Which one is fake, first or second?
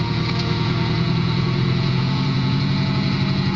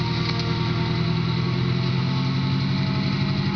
first